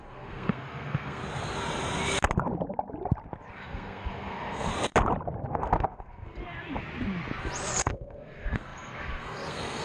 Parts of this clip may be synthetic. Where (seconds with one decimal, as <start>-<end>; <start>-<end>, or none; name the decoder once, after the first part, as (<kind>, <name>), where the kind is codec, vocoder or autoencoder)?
0.0-1.2 (codec, SNAC); 3.5-4.7; 5.5-6.4; 7.8-9.8